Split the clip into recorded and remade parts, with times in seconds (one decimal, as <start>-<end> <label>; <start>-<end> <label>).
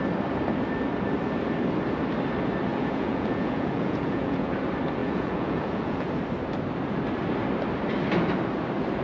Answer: 0.0-2.7 recorded; 2.7-4.5 remade; 4.5-5.0 recorded; 5.0-6.1 remade; 6.1-9.0 recorded